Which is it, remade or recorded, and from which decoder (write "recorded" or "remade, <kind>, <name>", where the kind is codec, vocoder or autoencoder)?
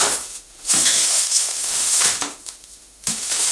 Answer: remade, autoencoder, DAC-VAE